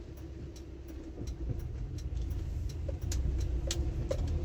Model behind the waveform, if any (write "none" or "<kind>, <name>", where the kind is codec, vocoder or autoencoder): none